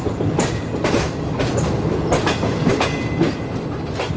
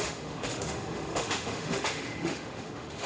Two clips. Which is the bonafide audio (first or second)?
first